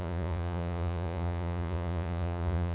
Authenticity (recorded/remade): remade